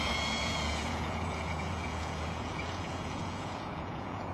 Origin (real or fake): fake